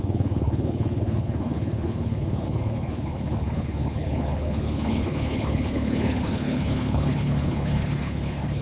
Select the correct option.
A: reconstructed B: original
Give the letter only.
A